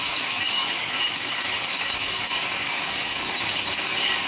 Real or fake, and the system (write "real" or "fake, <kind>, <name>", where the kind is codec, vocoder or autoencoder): fake, codec, DAC